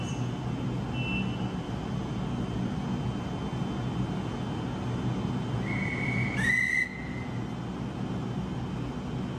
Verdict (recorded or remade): recorded